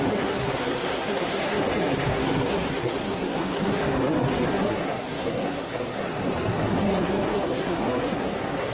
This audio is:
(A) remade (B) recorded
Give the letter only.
A